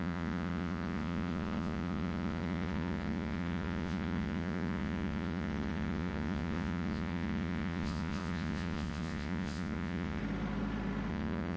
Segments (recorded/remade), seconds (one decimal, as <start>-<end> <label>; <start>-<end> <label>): 0.0-10.2 remade; 10.2-11.1 recorded; 11.1-11.6 remade